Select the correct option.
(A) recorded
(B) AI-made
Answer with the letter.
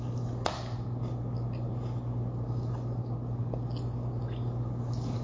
A